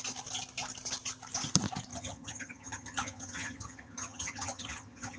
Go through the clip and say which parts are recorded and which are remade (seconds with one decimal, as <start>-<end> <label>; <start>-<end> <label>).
0.0-1.9 recorded; 1.9-5.2 remade